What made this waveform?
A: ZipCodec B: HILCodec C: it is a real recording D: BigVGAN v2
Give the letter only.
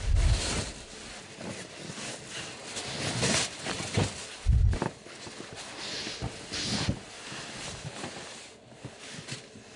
C